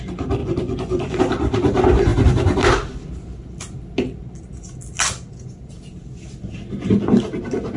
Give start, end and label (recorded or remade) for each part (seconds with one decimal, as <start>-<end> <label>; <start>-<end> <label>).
0.0-0.4 recorded; 0.4-1.2 remade; 1.2-7.8 recorded